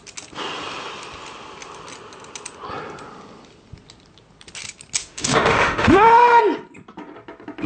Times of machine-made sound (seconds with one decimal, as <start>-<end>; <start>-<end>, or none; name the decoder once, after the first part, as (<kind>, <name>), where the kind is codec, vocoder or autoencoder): 5.0-6.4 (autoencoder, DAC-VAE)